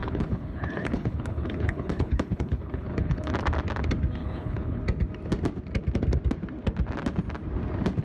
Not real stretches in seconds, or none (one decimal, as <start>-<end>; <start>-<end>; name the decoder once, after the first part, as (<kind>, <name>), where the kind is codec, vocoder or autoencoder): 0.0-3.3 (codec, HILCodec); 4.2-4.8